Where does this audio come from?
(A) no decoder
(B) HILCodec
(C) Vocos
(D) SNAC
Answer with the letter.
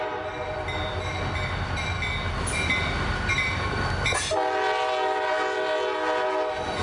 A